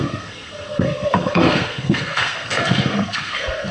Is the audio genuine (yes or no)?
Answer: no